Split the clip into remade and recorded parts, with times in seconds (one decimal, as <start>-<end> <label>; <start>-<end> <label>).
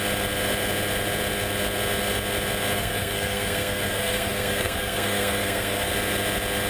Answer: 0.0-2.8 recorded; 2.8-5.9 remade; 5.9-6.7 recorded